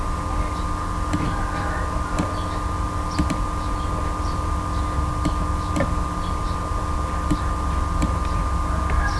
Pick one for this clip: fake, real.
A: real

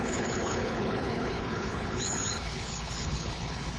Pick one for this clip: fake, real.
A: fake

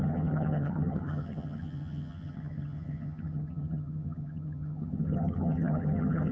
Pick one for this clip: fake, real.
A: fake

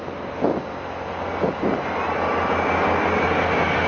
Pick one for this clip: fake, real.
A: real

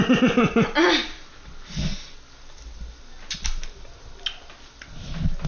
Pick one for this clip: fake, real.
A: real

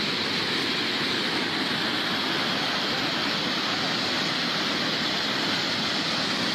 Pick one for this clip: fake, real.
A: real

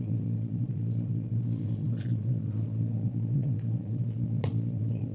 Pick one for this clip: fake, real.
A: fake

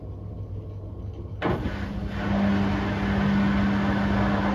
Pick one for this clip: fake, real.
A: real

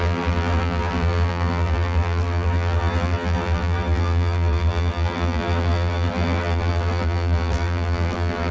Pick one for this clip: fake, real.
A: fake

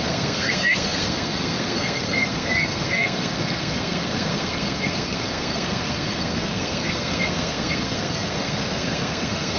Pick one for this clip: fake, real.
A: fake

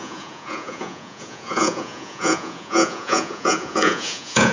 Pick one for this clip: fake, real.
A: fake